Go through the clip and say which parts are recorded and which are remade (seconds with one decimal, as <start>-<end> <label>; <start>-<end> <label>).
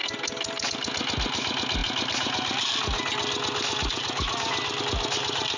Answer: 0.0-5.6 recorded